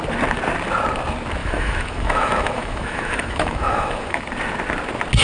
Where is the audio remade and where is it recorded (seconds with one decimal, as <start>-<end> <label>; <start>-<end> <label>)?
0.0-1.4 recorded; 1.4-4.2 remade; 4.2-5.2 recorded